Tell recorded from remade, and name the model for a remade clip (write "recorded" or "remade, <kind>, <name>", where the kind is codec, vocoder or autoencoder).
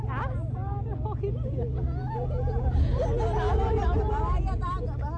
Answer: recorded